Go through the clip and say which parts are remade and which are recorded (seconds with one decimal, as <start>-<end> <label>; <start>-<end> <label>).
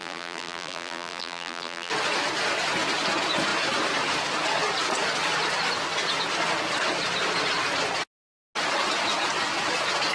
0.0-1.9 remade; 1.9-10.1 recorded